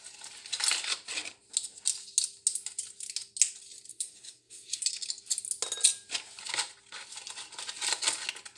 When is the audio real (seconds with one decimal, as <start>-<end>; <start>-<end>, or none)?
0.0-3.9; 4.9-8.6